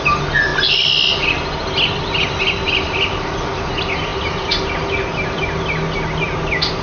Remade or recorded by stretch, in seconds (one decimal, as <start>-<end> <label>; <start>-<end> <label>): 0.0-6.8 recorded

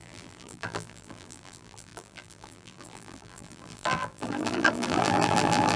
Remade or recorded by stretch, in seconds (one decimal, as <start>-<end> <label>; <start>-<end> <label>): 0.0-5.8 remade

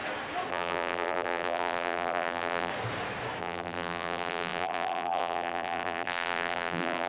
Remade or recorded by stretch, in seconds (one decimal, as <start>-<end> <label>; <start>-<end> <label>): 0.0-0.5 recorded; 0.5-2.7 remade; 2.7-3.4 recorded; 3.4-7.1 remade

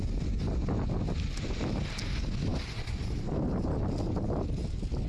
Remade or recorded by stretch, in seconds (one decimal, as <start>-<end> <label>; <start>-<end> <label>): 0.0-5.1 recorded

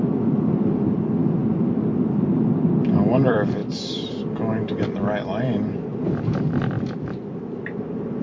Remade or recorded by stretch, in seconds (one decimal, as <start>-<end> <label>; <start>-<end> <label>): 0.0-1.4 remade; 1.4-2.9 recorded; 2.9-8.2 remade